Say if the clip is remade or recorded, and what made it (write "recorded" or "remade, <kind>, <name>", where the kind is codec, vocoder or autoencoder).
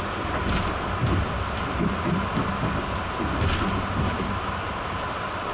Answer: recorded